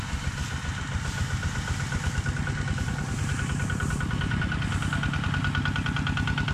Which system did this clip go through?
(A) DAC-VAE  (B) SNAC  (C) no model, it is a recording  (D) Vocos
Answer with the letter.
C